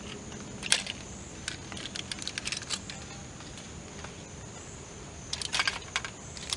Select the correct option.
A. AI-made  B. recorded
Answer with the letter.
B